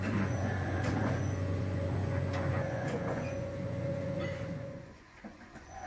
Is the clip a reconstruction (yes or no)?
yes